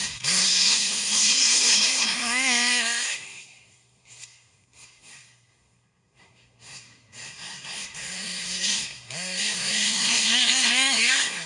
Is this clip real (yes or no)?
no